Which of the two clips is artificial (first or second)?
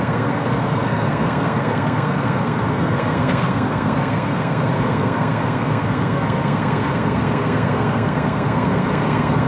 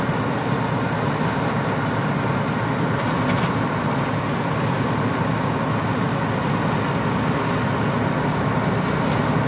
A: first